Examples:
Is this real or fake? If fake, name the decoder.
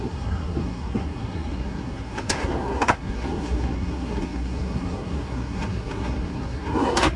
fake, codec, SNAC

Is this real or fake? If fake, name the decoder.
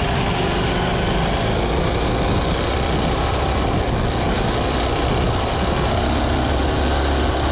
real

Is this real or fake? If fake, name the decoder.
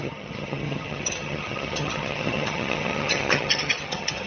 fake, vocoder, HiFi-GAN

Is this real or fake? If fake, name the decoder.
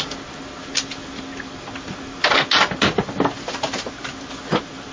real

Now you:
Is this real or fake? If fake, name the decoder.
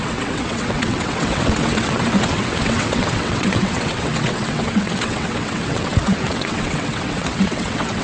fake, vocoder, WaveNeXt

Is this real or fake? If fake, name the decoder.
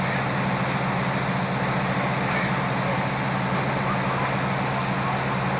real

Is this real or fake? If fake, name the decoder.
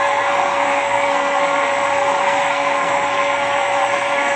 fake, codec, SNAC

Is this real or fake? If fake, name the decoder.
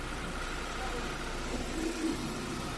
real